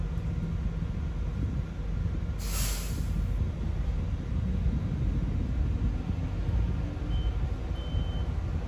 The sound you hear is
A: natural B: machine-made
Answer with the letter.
A